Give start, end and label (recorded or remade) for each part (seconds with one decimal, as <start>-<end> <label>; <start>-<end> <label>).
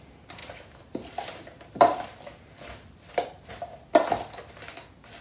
0.0-5.2 recorded